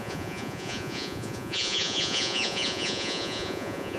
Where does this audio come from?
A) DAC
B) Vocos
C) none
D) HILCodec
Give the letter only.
B